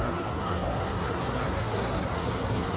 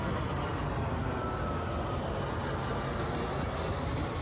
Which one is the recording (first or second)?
second